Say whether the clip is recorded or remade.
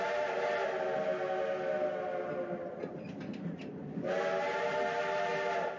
recorded